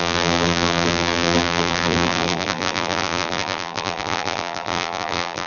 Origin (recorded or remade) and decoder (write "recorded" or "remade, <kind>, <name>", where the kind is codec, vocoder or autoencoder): remade, vocoder, BigVGAN v2